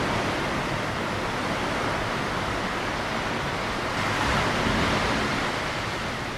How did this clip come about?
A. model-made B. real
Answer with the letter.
B